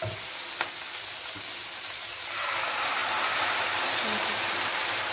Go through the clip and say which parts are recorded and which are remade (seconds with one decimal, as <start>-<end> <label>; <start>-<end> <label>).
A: 0.0-5.1 recorded